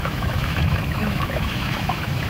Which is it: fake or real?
fake